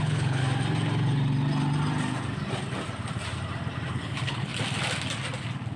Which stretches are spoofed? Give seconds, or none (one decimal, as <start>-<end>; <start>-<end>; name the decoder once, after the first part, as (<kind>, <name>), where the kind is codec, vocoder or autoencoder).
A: 0.0-0.4 (codec, HILCodec); 3.9-4.5